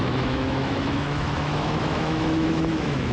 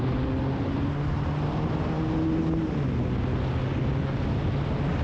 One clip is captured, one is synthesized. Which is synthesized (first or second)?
first